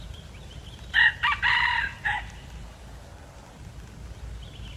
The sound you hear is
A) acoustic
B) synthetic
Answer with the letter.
A